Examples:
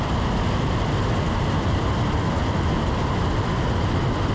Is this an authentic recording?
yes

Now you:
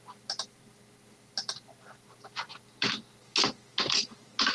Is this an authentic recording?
yes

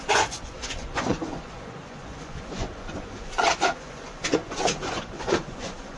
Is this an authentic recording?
no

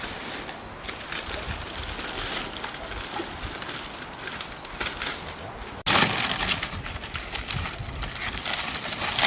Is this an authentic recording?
yes